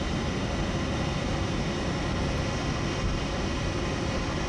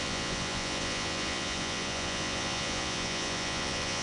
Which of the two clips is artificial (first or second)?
second